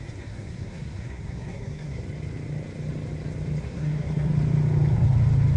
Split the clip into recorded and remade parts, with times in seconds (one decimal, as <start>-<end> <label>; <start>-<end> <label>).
0.0-2.0 remade; 2.0-3.6 recorded; 3.6-4.3 remade; 4.3-5.6 recorded